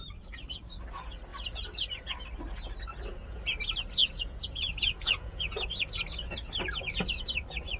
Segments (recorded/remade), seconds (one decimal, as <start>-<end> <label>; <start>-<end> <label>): 0.0-4.0 recorded; 4.0-6.0 remade; 6.0-7.8 recorded